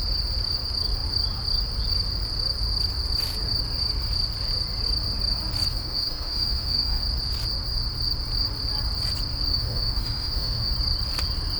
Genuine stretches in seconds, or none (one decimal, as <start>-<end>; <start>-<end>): 0.0-5.7; 7.0-9.5; 10.7-11.6